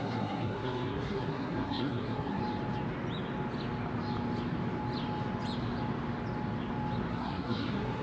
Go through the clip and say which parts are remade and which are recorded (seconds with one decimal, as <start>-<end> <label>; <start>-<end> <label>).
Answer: 0.0-2.4 remade; 2.4-7.1 recorded; 7.1-8.0 remade